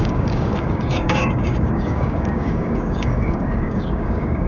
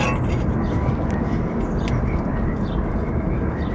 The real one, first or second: second